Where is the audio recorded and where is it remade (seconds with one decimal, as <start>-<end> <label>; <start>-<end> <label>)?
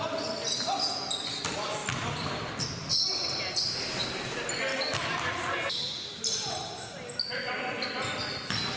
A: 0.0-8.8 recorded